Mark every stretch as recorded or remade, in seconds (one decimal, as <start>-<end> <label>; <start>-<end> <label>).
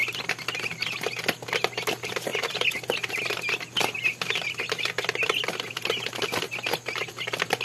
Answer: 0.0-7.6 recorded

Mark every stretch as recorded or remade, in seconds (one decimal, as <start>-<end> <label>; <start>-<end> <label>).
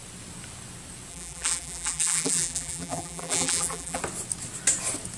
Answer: 0.0-1.1 recorded; 1.1-4.0 remade; 4.0-5.2 recorded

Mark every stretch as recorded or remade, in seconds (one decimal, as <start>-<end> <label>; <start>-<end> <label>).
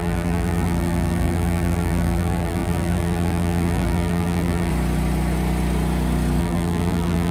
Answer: 0.0-4.7 remade; 4.7-6.4 recorded; 6.4-7.3 remade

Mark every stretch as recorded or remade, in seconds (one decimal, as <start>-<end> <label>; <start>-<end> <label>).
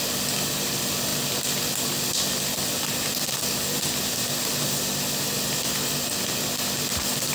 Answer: 0.0-7.3 recorded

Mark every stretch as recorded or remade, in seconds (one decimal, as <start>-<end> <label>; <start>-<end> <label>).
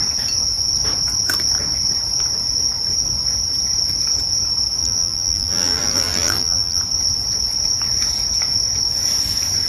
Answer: 0.0-4.8 recorded; 4.8-6.8 remade; 6.8-9.7 recorded